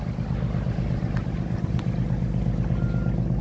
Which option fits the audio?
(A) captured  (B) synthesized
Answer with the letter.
A